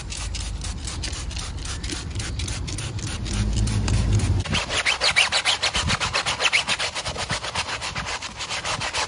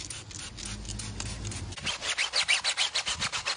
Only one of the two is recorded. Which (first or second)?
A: second